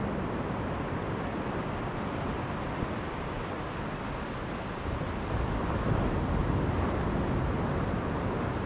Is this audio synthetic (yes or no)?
no